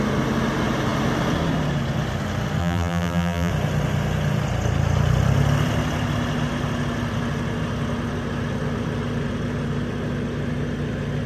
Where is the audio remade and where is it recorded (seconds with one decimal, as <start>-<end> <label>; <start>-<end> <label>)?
0.0-2.6 recorded; 2.6-3.5 remade; 3.5-11.3 recorded